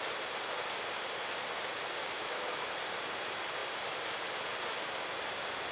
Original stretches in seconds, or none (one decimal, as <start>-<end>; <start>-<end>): 0.0-2.0; 2.7-5.7